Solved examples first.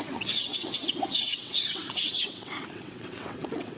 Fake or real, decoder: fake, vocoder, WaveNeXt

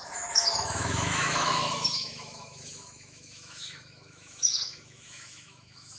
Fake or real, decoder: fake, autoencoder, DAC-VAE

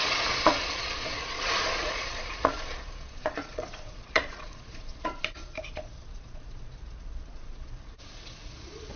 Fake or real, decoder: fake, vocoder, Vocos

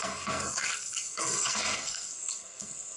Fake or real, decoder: fake, codec, SNAC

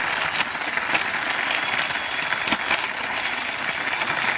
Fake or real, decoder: real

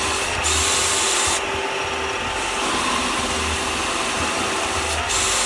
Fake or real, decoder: real